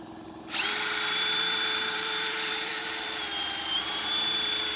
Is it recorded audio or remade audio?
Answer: remade